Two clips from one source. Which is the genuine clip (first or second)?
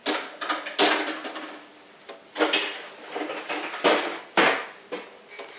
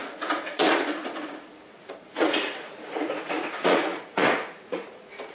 first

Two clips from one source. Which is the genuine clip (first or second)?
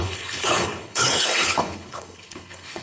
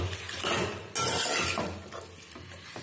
second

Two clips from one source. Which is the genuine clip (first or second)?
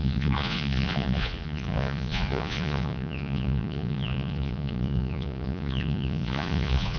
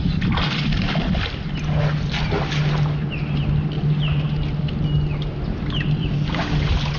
second